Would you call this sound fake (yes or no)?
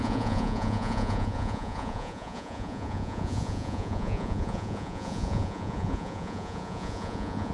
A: yes